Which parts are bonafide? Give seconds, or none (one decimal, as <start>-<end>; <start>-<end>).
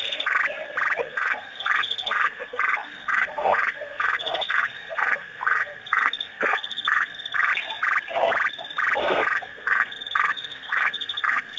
0.4-1.0; 7.5-9.0